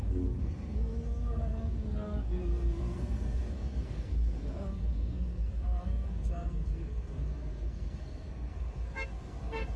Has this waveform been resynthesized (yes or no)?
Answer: yes